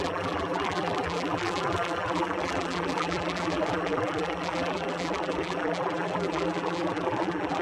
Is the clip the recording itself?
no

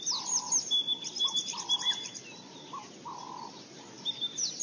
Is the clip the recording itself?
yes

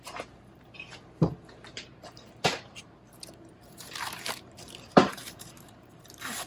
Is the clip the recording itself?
no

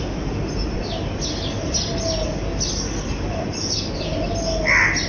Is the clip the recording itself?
yes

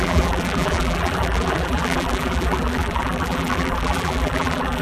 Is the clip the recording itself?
no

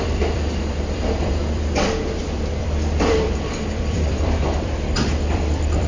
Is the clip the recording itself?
no